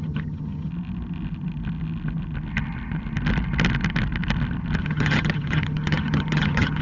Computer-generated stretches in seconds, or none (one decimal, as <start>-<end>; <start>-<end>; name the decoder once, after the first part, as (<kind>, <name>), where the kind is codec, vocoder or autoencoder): 0.0-0.7 (vocoder, HiFi-GAN); 4.8-6.8